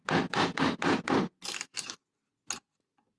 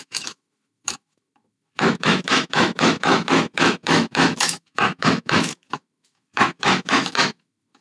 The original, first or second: first